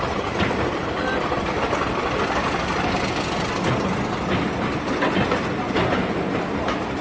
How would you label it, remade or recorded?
recorded